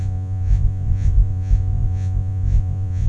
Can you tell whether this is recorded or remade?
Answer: remade